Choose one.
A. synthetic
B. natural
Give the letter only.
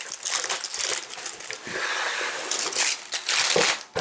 B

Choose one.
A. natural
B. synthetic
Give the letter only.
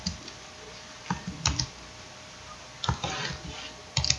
A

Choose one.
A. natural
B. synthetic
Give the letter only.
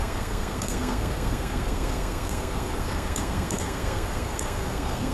B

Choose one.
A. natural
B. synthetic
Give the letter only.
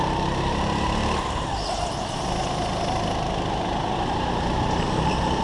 A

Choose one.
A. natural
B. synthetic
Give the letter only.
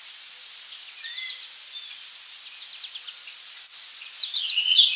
A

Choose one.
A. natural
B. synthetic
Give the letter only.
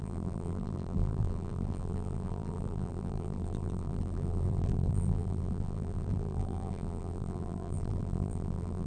B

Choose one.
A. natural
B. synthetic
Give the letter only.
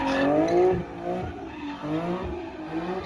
A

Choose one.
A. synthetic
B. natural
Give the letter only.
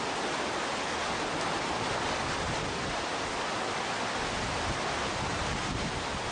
B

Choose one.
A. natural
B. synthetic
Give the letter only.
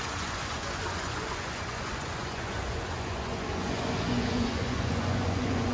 B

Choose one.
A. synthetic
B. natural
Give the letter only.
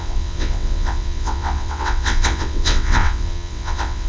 A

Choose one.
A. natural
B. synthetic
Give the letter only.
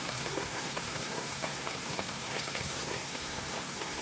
B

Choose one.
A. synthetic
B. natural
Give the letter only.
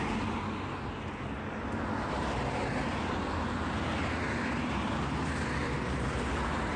B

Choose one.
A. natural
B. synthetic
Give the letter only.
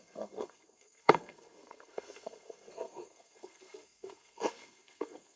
B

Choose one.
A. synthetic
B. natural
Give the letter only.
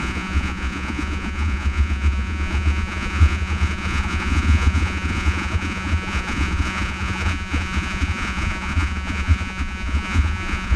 A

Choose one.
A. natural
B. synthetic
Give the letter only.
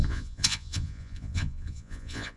B